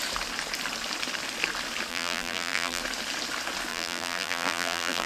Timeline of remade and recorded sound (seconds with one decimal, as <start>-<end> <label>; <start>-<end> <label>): 0.0-1.9 recorded; 1.9-2.8 remade; 2.8-3.7 recorded; 3.7-5.1 remade